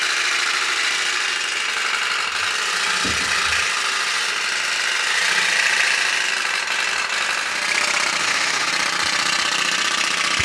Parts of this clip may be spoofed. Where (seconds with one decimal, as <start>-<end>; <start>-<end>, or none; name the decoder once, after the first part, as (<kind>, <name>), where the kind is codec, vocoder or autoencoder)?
8.2-8.7 (autoencoder, DAC-VAE)